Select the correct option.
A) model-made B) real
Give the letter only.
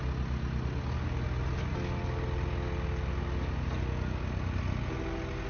B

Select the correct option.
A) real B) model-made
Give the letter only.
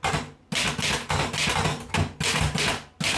A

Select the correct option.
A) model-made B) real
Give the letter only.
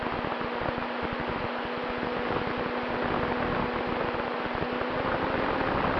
B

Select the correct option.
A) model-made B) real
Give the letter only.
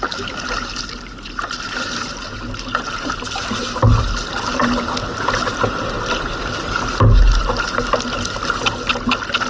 B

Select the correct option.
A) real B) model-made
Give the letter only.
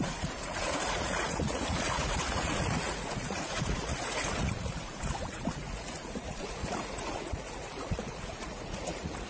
B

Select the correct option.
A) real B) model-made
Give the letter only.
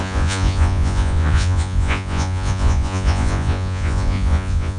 B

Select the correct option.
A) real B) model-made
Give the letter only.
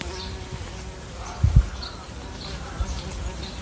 A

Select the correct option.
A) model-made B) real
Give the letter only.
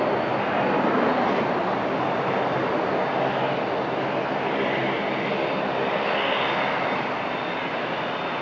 B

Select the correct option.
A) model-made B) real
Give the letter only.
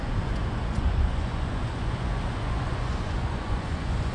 A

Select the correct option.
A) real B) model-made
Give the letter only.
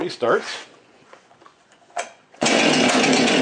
B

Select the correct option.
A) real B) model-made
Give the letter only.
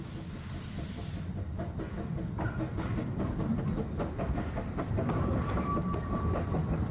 A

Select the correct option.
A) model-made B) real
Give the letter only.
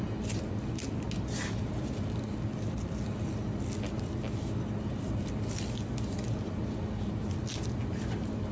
B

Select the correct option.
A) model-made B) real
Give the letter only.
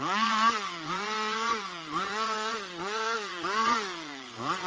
A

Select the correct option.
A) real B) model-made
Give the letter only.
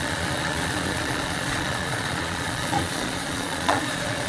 B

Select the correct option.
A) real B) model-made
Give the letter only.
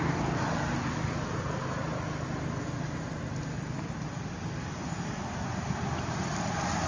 A